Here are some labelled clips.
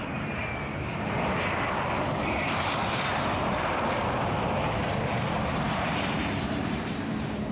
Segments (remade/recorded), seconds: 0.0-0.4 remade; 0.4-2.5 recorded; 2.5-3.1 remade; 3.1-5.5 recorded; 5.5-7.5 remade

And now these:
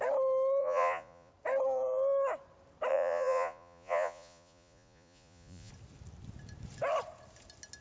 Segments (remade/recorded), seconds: 0.0-0.6 recorded; 0.6-1.3 remade; 1.3-2.9 recorded; 2.9-5.7 remade; 5.7-7.8 recorded

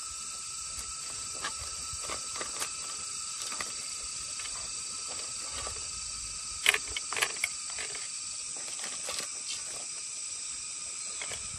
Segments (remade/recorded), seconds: 0.0-11.6 recorded